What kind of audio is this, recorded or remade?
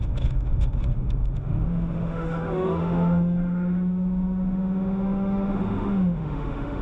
remade